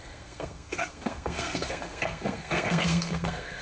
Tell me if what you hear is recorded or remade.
remade